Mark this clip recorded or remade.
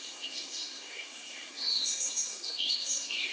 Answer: remade